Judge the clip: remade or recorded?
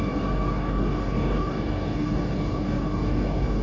remade